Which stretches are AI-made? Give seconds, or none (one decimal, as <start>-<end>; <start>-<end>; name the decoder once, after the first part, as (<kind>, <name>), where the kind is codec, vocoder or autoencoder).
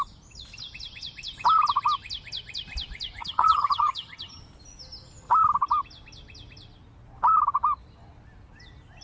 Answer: 3.2-4.4 (vocoder, HiFi-GAN)